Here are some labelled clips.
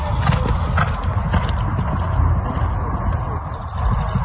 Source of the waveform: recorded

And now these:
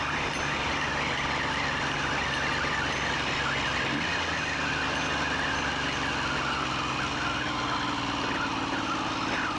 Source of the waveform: recorded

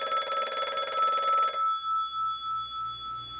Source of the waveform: recorded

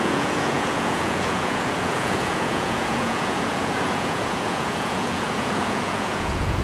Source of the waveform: remade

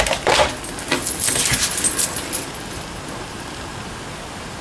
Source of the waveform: recorded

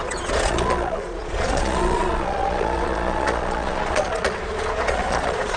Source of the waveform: remade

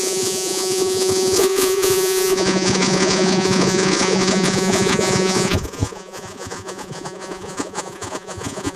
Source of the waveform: remade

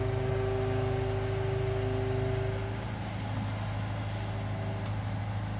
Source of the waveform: recorded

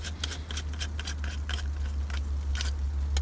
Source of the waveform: recorded